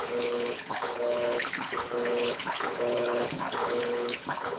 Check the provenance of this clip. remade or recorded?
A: remade